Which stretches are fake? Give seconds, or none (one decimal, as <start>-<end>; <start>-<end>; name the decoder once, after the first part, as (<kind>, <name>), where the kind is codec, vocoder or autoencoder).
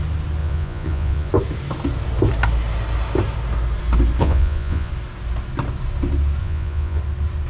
0.4-1.3 (vocoder, Vocos); 4.2-4.9; 6.4-7.0